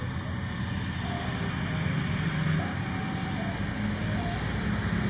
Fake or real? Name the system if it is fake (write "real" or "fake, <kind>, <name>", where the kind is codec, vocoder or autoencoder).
real